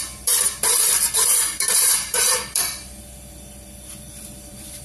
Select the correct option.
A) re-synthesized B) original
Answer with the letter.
A